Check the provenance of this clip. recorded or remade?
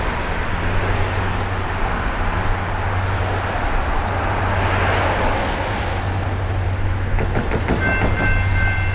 recorded